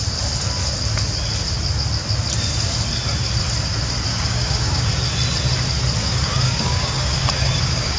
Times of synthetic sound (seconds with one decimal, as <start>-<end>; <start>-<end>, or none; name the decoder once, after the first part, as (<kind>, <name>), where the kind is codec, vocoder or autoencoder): 4.1-4.9 (codec, DAC); 6.0-8.0